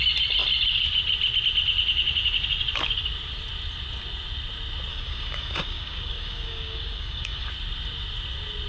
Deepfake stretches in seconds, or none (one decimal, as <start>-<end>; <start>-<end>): 4.9-7.5